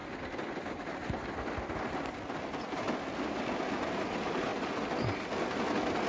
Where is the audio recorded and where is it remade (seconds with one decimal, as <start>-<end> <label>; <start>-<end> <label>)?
0.0-6.1 recorded